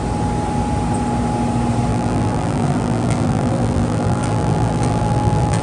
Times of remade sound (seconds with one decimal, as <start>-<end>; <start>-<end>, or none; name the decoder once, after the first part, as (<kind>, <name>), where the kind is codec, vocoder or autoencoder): 1.9-5.6 (vocoder, BigVGAN v2)